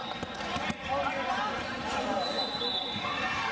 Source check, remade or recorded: recorded